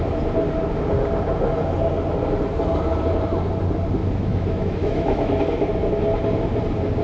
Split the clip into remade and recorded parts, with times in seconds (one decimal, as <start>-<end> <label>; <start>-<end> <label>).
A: 0.0-4.0 recorded; 4.0-5.4 remade; 5.4-7.0 recorded